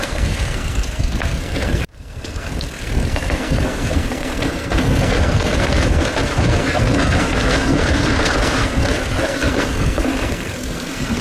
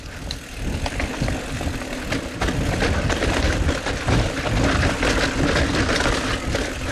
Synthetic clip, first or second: first